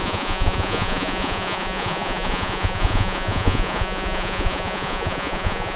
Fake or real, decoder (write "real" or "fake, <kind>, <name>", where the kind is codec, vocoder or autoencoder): fake, vocoder, Vocos